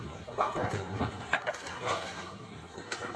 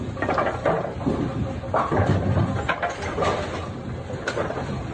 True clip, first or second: second